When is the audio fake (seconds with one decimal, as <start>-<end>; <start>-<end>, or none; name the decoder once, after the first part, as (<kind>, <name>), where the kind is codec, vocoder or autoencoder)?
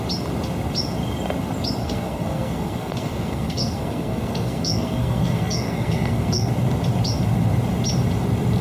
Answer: 1.8-6.5 (codec, SNAC)